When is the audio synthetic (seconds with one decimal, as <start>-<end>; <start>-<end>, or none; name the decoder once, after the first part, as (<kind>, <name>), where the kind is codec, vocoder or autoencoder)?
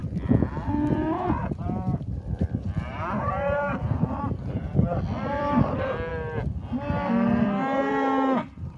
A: 0.0-0.5 (vocoder, BigVGAN v2); 1.4-5.6